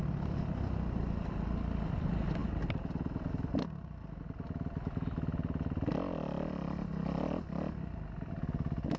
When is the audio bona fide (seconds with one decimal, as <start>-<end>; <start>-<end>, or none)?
0.0-9.0